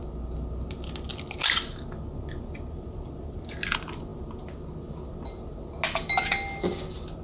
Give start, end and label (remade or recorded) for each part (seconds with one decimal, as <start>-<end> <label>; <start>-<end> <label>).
0.0-7.2 recorded